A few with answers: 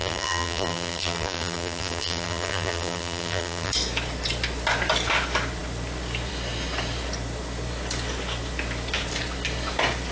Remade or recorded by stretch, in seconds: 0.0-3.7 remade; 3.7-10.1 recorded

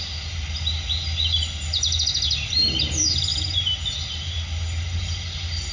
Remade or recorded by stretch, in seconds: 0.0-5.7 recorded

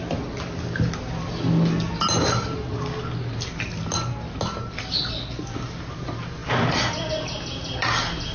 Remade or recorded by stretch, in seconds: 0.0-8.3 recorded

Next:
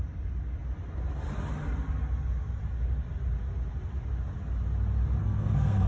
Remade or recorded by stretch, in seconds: 0.0-5.2 recorded; 5.2-5.9 remade

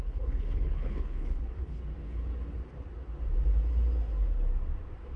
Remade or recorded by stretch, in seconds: 0.0-1.8 remade; 1.8-5.2 recorded